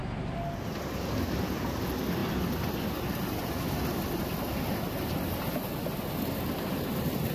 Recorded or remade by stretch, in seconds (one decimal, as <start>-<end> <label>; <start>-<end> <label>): 0.0-7.3 recorded

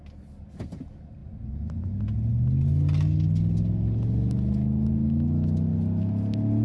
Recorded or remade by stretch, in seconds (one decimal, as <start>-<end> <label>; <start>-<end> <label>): 0.0-6.6 recorded